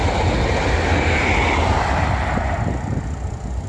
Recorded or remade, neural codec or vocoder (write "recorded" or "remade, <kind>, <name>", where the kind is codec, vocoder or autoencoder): recorded